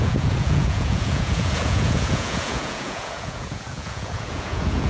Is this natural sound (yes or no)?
no